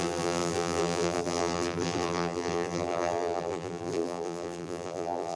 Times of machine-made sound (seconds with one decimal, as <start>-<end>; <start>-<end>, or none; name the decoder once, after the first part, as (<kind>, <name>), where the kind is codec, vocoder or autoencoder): 0.0-5.4 (vocoder, BigVGAN v2)